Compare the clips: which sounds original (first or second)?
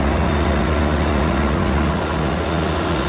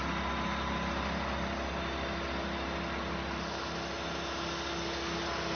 second